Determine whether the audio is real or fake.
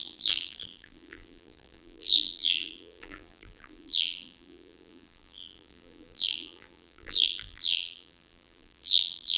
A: fake